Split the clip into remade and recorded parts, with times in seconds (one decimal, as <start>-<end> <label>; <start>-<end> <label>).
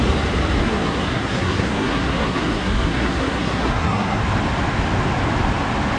0.0-0.6 recorded; 0.6-4.2 remade; 4.2-6.0 recorded